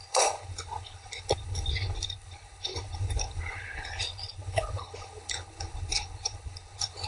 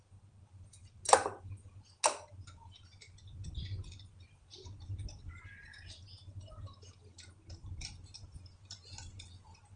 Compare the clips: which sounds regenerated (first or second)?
first